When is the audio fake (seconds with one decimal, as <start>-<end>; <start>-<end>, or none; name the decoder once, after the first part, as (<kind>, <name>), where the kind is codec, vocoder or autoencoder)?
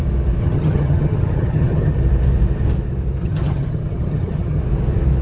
0.4-1.9 (vocoder, HiFi-GAN); 3.2-4.6